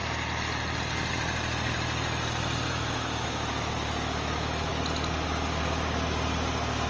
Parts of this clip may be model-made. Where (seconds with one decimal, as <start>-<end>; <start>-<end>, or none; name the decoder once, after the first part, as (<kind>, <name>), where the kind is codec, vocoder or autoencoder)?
2.7-4.7 (autoencoder, DAC-VAE)

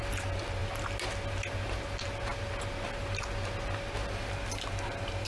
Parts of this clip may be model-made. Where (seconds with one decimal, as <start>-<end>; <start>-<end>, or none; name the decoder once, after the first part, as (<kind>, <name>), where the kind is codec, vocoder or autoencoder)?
none

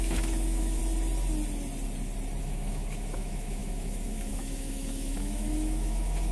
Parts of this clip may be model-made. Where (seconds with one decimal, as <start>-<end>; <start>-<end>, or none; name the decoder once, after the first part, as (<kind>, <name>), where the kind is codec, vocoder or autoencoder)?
0.0-0.8 (autoencoder, DAC-VAE); 2.4-6.3

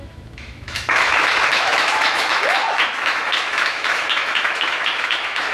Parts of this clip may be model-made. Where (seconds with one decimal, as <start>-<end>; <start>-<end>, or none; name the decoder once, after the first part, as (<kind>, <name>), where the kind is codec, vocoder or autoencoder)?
0.0-5.5 (autoencoder, DAC-VAE)

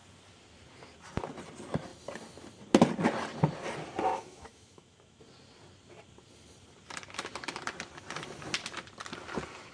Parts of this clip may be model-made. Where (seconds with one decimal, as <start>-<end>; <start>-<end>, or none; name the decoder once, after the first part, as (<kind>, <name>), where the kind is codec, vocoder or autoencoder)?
4.1-5.2 (autoencoder, DAC-VAE)

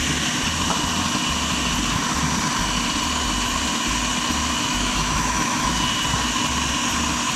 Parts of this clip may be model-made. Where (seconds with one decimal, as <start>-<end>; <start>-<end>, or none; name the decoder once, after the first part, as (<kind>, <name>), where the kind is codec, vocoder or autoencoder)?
4.7-5.7 (autoencoder, DAC-VAE)